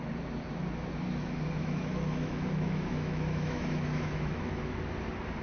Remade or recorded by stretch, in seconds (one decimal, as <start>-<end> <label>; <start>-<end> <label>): 0.0-1.6 recorded; 1.6-4.8 remade; 4.8-5.4 recorded